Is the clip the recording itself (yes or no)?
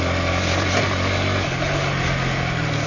yes